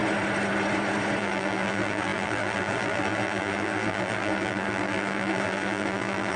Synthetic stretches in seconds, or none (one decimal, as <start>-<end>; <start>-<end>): 1.2-6.4